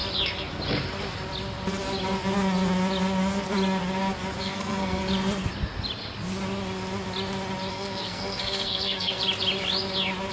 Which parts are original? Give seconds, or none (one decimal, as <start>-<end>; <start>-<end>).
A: 0.0-4.4; 5.0-7.7; 9.2-10.3